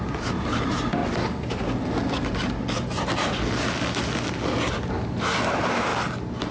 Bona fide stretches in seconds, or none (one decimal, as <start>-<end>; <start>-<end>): 1.0-4.9; 5.9-6.5